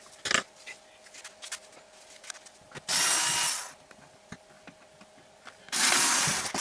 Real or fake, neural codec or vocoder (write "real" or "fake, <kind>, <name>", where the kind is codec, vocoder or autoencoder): real